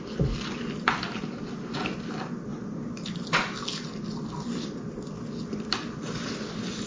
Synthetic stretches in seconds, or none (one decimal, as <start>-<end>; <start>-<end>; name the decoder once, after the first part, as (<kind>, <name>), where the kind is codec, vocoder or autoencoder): none